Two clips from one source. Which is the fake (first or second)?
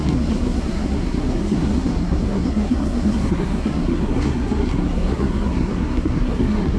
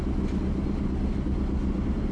first